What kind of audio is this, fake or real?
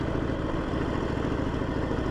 real